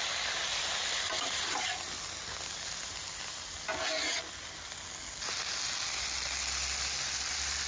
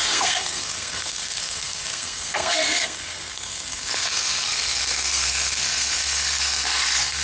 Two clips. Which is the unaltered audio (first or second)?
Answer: first